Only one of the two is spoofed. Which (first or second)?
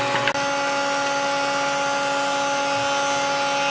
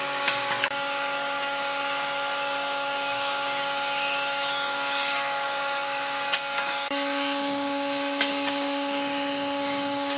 second